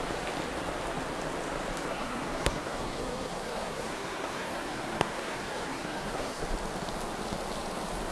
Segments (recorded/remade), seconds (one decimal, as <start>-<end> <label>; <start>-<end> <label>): 0.0-1.9 recorded; 1.9-6.4 remade; 6.4-8.1 recorded

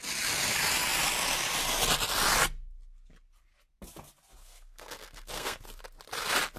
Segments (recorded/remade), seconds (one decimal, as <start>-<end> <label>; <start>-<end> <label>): 0.0-4.4 recorded; 4.4-5.6 remade; 5.6-6.6 recorded

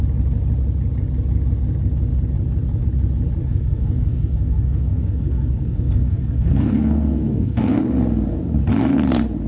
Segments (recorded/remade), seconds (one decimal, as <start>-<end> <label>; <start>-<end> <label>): 0.0-3.4 recorded; 3.4-7.8 remade; 7.8-9.5 recorded